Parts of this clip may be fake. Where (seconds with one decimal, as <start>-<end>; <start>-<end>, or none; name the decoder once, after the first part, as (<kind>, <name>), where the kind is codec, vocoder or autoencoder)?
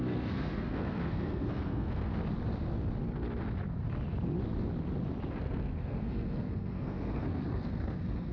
0.0-2.1 (codec, SNAC); 5.4-8.3